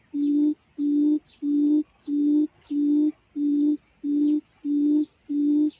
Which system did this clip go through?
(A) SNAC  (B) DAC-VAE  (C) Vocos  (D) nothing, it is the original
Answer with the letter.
D